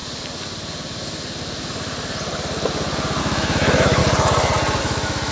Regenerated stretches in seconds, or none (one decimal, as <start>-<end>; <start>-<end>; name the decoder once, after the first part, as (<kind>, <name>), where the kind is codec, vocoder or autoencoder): 3.2-4.0 (autoencoder, DAC-VAE); 4.8-5.3